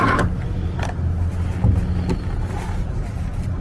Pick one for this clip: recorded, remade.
recorded